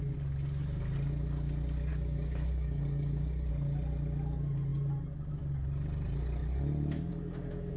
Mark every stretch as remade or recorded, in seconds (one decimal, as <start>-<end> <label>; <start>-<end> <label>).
0.0-1.9 recorded; 1.9-3.5 remade; 3.5-7.8 recorded